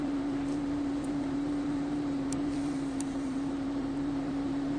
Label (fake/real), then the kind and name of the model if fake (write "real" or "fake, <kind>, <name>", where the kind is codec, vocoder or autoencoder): fake, vocoder, BigVGAN v2